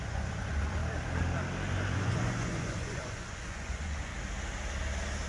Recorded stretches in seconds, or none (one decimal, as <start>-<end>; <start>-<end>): 0.8-1.7; 4.1-5.3